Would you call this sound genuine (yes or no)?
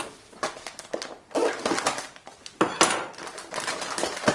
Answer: yes